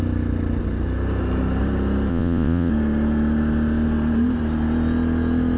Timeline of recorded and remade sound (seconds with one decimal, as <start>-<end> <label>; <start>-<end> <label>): 0.0-2.1 recorded; 2.1-2.7 remade; 2.7-5.6 recorded